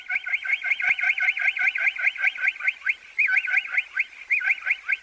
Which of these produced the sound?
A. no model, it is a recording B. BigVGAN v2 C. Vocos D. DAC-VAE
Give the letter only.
A